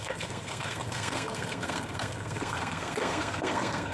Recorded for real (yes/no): no